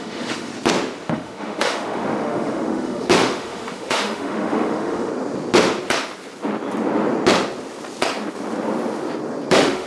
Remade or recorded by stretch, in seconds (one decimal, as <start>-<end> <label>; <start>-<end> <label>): 0.0-0.5 remade; 0.5-1.1 recorded; 1.1-5.1 remade; 5.1-9.5 recorded; 9.5-9.9 remade